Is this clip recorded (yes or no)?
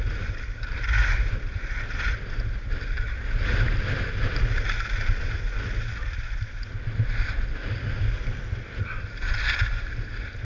yes